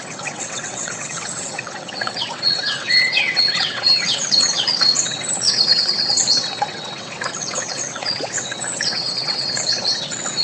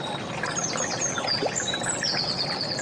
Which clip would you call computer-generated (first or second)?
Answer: first